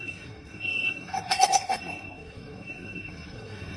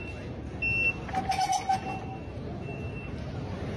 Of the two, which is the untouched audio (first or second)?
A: second